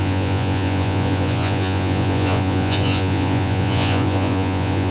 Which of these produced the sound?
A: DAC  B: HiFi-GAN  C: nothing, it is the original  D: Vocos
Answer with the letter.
D